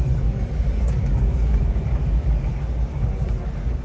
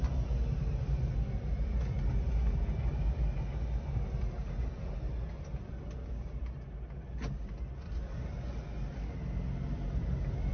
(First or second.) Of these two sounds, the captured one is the second